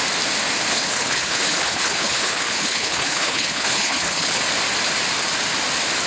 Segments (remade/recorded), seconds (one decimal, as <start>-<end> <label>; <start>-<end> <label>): 0.0-0.7 recorded; 0.7-4.4 remade; 4.4-6.1 recorded